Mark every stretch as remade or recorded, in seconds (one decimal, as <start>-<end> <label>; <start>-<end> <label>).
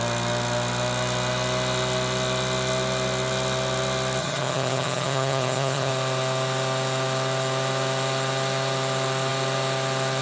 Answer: 0.0-4.2 recorded; 4.2-5.9 remade; 5.9-10.2 recorded